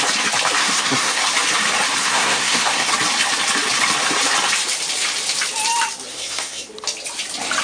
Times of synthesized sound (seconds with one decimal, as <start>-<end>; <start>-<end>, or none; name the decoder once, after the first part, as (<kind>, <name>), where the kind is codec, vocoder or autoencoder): 0.6-1.2 (codec, SNAC); 2.0-2.9; 6.1-6.7